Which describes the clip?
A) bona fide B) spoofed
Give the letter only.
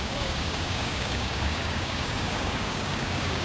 B